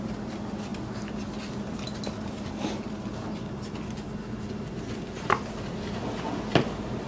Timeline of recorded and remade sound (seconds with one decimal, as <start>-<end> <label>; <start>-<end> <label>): 0.0-7.1 recorded